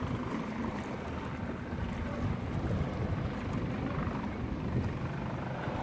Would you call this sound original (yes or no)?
yes